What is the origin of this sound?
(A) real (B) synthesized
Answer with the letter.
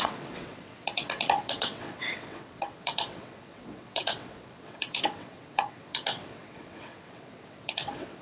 B